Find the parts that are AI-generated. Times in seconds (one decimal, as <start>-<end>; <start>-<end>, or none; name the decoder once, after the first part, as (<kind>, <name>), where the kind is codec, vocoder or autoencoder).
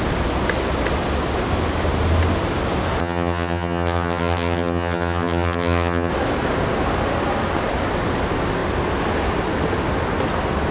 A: 3.0-6.1 (vocoder, HiFi-GAN)